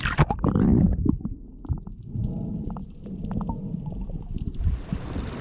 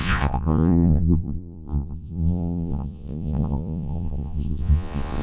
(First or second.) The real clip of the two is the first